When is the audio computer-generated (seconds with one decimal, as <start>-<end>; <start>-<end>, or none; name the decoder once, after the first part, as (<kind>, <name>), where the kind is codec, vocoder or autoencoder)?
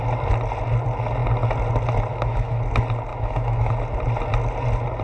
2.1-2.6 (autoencoder, DAC-VAE); 3.1-3.7